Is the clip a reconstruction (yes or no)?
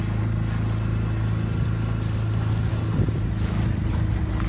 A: no